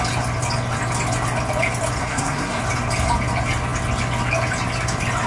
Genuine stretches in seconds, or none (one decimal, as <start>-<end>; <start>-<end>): 0.0-2.0; 2.6-5.3